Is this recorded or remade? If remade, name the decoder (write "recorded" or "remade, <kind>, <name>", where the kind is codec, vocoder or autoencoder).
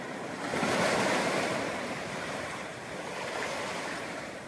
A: remade, vocoder, BigVGAN v2